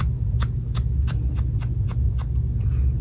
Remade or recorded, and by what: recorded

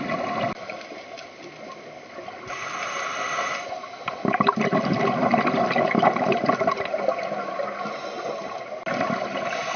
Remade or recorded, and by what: recorded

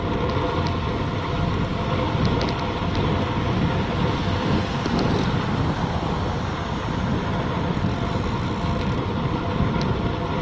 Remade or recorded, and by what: recorded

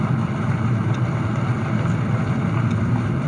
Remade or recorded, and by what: recorded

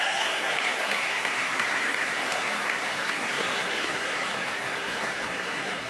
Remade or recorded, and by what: remade, codec, SNAC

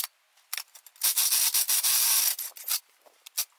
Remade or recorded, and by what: recorded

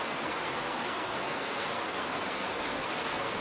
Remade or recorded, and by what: remade, codec, SNAC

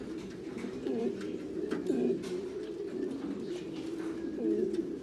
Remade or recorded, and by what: recorded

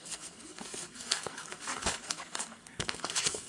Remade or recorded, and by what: remade, codec, SNAC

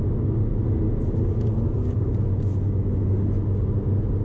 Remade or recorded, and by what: recorded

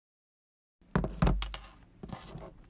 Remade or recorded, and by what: recorded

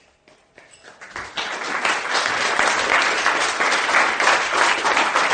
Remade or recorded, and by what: recorded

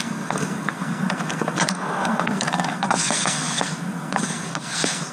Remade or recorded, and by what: remade, codec, SNAC